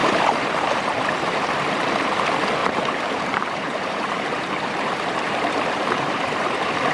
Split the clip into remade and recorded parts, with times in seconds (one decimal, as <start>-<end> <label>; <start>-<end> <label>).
0.0-0.8 remade; 0.8-2.6 recorded; 2.6-6.9 remade